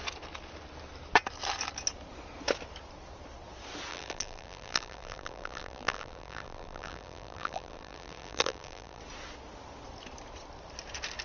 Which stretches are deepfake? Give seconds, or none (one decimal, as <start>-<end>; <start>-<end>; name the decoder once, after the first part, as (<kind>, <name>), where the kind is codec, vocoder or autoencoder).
3.9-9.0 (vocoder, BigVGAN v2)

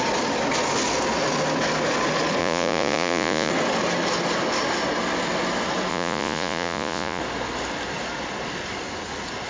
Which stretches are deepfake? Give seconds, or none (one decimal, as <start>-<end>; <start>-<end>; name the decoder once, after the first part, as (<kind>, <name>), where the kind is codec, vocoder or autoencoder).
2.4-3.5 (vocoder, Vocos); 5.9-7.2

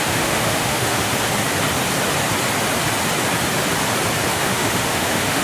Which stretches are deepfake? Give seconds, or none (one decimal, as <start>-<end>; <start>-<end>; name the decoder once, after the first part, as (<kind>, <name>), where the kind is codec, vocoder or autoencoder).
0.0-1.1 (autoencoder, DAC-VAE); 4.3-5.4

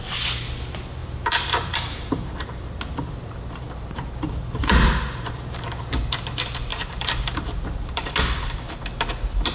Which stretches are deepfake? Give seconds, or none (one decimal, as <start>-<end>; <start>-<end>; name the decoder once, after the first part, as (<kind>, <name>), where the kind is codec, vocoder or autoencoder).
1.0-2.6 (vocoder, BigVGAN v2); 4.6-6.0; 6.7-8.1

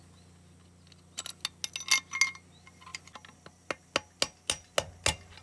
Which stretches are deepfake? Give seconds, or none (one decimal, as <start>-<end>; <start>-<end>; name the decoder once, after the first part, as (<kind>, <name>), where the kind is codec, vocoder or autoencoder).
none

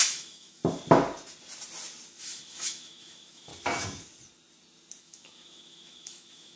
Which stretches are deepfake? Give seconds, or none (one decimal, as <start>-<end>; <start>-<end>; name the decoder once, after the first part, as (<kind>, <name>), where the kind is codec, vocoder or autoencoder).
0.0-0.6 (autoencoder, DAC-VAE); 2.1-3.5; 5.0-6.6